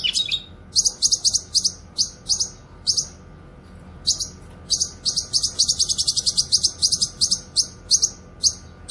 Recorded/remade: recorded